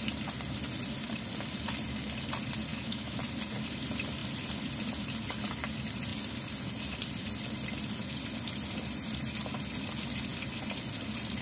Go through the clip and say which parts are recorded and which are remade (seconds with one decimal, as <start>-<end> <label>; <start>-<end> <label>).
0.0-2.7 recorded; 2.7-3.2 remade; 3.2-11.4 recorded